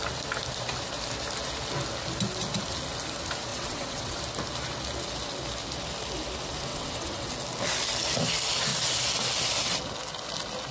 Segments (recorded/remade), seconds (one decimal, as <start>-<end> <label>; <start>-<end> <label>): 0.0-3.5 recorded; 3.5-4.2 remade; 4.2-6.7 recorded; 6.7-7.3 remade; 7.3-10.7 recorded